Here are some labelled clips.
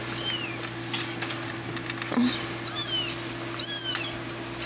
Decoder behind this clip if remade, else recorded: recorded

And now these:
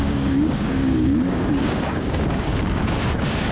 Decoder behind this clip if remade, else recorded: remade, codec, DAC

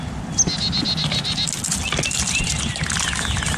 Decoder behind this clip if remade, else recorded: recorded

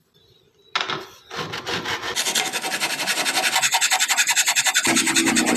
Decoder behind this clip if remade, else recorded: recorded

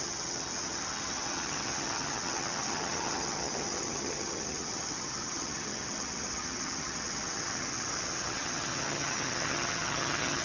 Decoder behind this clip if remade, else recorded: remade, vocoder, HiFi-GAN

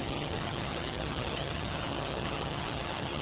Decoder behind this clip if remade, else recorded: remade, vocoder, HiFi-GAN